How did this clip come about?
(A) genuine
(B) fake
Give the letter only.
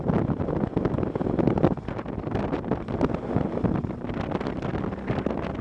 A